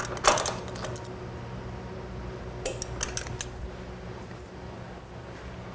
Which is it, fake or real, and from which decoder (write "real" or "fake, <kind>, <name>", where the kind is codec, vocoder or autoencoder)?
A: real